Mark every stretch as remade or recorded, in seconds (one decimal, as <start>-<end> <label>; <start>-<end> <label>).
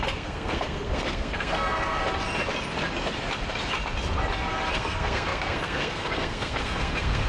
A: 0.0-2.0 remade; 2.0-4.7 recorded; 4.7-7.3 remade